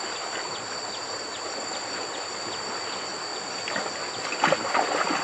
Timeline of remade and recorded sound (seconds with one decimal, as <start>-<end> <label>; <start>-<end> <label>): 0.0-1.3 recorded; 1.3-2.4 remade; 2.4-5.2 recorded